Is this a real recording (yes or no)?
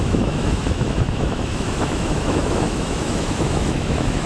no